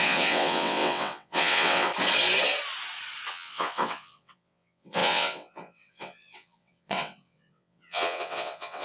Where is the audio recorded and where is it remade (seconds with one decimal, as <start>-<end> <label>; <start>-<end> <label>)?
0.0-1.9 remade; 1.9-3.3 recorded; 3.3-8.8 remade

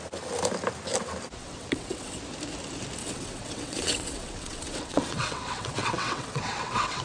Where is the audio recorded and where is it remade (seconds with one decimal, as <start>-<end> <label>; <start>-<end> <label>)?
0.0-1.4 recorded; 1.4-2.2 remade; 2.2-3.0 recorded; 3.0-7.0 remade

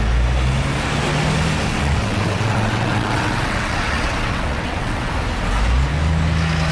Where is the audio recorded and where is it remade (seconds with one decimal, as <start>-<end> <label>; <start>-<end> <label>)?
0.0-1.7 recorded; 1.7-5.1 remade; 5.1-6.7 recorded

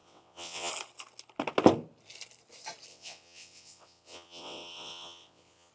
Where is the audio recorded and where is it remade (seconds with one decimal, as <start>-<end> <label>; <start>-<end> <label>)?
0.0-0.7 remade; 0.7-2.9 recorded; 2.9-5.7 remade

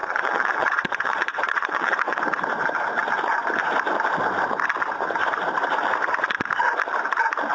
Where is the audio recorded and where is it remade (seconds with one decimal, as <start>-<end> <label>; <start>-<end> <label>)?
0.0-2.2 remade; 2.2-7.5 recorded

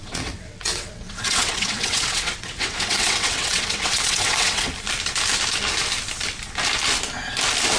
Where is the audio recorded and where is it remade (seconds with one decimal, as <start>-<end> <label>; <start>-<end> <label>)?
0.0-4.7 remade; 4.7-7.8 recorded

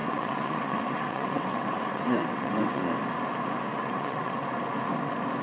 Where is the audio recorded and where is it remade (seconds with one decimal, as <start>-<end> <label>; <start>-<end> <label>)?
0.0-2.8 remade; 2.8-3.7 recorded; 3.7-4.4 remade; 4.4-5.4 recorded